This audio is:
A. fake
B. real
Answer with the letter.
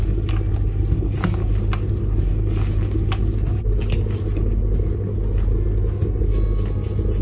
B